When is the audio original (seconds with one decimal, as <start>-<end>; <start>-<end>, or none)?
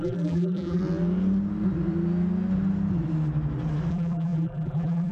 0.8-3.9